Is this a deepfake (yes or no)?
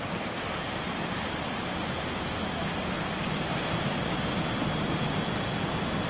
no